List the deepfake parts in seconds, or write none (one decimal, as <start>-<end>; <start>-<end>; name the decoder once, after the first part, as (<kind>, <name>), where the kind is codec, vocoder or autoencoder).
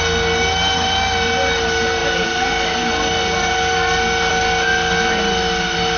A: none